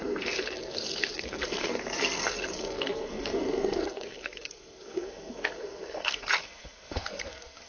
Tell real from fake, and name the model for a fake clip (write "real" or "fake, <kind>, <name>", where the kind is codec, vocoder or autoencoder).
fake, codec, SNAC